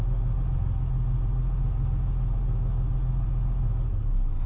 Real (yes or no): yes